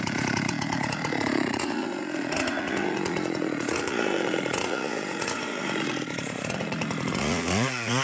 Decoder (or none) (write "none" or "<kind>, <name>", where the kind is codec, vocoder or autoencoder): vocoder, Vocos